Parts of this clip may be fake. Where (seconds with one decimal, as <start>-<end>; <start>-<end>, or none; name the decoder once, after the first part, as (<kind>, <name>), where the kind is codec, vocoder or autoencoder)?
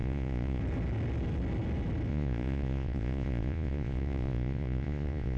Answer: 0.0-0.6 (vocoder, Vocos); 2.1-5.4